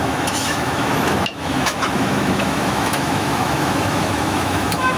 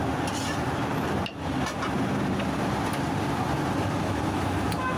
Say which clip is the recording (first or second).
second